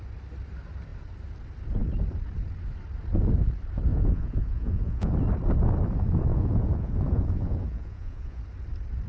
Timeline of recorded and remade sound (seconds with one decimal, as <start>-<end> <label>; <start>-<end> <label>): 0.0-3.9 recorded; 3.9-5.1 remade; 5.1-6.3 recorded; 6.3-8.4 remade; 8.4-9.1 recorded